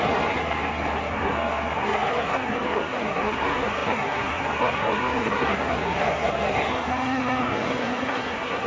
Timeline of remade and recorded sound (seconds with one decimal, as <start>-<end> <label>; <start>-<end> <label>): 0.0-8.7 remade